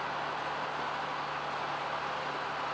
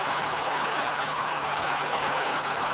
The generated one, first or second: second